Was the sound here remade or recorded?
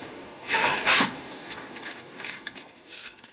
remade